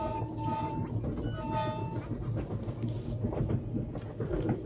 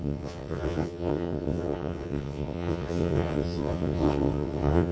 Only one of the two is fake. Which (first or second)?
second